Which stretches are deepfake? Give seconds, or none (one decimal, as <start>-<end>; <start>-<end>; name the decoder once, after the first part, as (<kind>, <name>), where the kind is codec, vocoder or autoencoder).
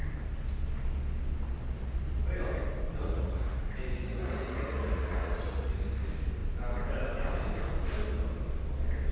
3.0-3.6 (vocoder, Vocos); 4.1-5.7